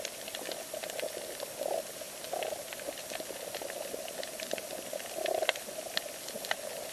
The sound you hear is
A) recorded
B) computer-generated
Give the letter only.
A